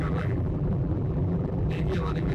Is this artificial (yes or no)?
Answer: yes